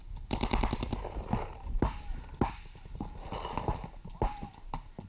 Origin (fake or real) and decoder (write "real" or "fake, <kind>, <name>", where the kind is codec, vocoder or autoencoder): real